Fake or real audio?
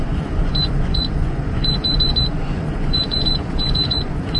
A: fake